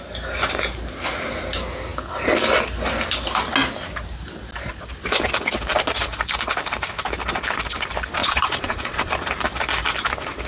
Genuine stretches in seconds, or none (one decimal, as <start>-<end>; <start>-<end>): 0.0-8.2; 9.1-10.5